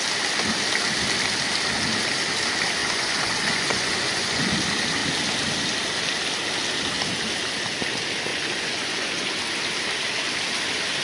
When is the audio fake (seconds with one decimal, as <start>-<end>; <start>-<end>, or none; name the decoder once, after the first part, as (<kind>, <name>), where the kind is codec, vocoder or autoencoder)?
2.8-4.5 (vocoder, Vocos); 8.3-9.3